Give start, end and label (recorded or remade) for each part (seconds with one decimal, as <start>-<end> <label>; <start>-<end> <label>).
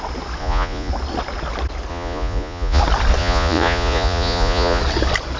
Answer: 0.0-0.4 recorded; 0.4-0.9 remade; 0.9-1.9 recorded; 1.9-2.8 remade; 2.8-3.2 recorded; 3.2-4.8 remade; 4.8-5.4 recorded